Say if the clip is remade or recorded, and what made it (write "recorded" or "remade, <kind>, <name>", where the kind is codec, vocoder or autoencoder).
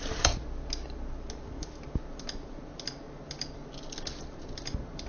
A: recorded